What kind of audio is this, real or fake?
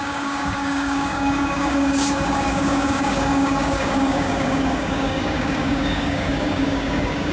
fake